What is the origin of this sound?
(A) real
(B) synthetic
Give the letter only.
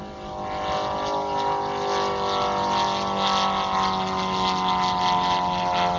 A